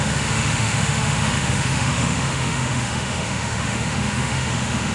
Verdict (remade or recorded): remade